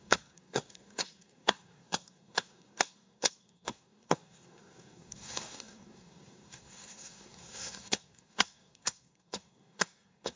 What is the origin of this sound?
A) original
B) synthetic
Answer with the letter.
B